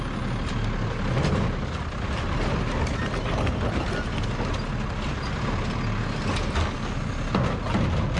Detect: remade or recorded recorded